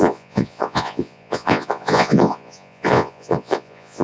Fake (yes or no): yes